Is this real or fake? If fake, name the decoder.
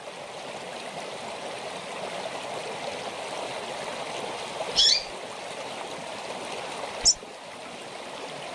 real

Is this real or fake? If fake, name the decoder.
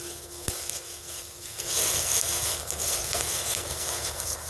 fake, codec, SNAC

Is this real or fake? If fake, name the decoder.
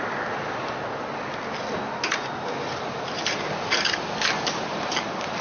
real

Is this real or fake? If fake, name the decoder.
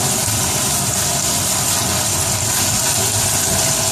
real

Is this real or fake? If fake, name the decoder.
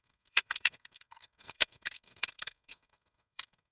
fake, codec, SNAC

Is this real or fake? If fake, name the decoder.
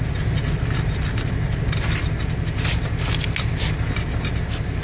real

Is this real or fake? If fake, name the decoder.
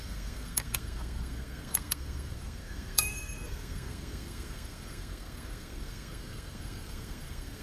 fake, codec, SNAC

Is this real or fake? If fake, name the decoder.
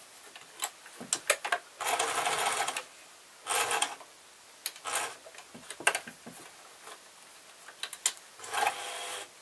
real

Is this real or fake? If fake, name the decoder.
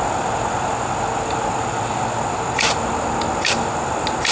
real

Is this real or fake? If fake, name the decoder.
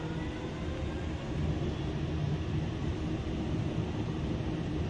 real